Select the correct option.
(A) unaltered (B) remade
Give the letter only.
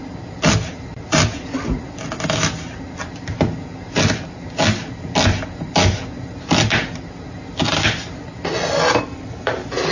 A